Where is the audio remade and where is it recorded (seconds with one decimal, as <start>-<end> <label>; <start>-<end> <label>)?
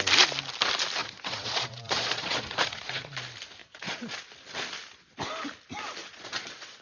0.0-1.0 recorded; 1.0-3.1 remade; 3.1-3.6 recorded; 3.6-4.2 remade; 4.2-6.0 recorded; 6.0-6.8 remade